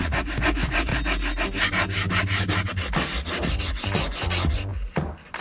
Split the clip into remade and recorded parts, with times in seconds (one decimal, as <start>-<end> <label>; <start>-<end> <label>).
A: 0.0-0.9 remade; 0.9-3.5 recorded; 3.5-4.7 remade; 4.7-5.4 recorded